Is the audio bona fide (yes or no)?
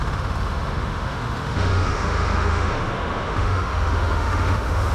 no